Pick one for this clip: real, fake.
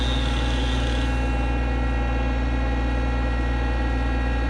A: real